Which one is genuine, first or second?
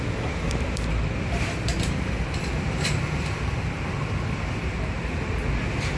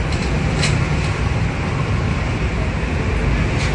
second